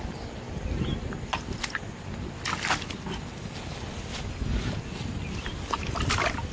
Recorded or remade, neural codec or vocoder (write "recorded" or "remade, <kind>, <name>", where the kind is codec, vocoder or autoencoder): recorded